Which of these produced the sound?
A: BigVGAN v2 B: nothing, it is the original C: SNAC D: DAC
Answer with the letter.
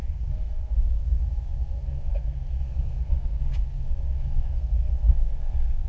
C